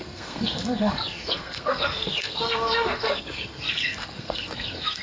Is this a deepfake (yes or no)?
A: yes